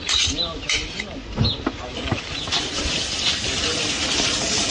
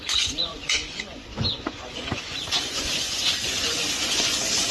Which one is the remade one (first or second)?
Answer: second